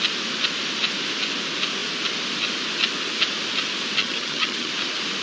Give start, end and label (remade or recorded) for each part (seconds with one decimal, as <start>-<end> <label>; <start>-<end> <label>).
0.0-4.0 recorded; 4.0-4.7 remade; 4.7-5.2 recorded